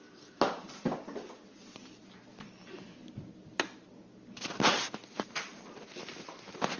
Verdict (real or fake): real